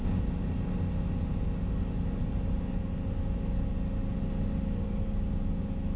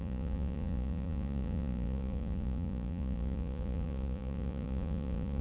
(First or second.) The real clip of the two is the first